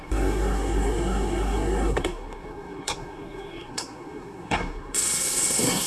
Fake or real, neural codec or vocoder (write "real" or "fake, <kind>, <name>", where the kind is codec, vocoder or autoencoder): fake, codec, SNAC